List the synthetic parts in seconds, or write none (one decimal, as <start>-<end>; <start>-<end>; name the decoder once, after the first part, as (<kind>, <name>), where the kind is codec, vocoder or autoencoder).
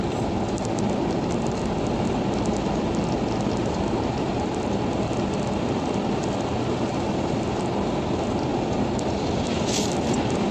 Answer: none